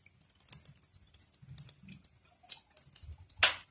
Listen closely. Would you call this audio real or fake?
real